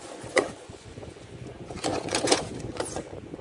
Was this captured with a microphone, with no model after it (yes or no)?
no